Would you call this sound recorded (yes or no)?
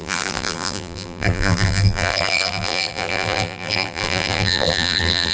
no